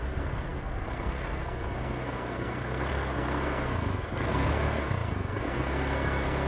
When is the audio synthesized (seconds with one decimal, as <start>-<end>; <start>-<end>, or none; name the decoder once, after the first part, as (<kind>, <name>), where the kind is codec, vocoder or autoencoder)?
0.0-6.5 (codec, SNAC)